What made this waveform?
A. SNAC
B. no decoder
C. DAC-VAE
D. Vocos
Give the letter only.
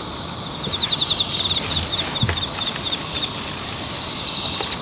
B